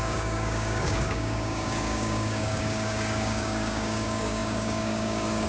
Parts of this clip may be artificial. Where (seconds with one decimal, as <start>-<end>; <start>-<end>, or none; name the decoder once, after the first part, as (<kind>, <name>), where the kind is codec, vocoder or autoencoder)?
0.0-5.5 (codec, DAC)

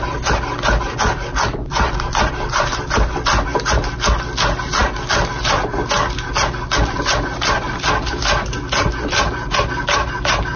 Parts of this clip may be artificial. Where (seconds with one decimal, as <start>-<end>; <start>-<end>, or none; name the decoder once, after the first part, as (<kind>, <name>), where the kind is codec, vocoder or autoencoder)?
none

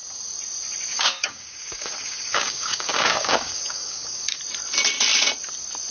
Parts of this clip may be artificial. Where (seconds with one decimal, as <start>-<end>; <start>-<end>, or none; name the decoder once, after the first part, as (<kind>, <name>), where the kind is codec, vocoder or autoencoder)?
0.9-4.4 (codec, DAC)

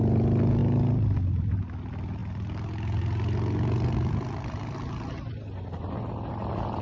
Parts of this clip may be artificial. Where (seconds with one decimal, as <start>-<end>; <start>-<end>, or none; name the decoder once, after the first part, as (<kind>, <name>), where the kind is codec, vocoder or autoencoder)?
none